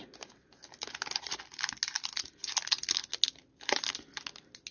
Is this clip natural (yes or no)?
yes